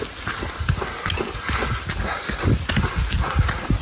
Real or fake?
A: real